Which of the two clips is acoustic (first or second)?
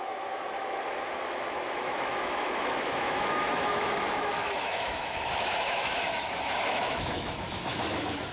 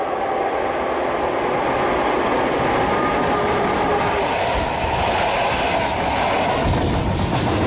second